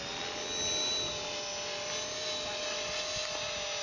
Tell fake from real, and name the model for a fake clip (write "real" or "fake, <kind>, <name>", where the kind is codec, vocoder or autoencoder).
real